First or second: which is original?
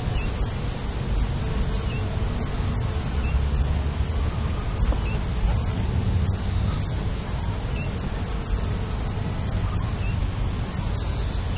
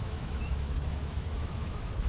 first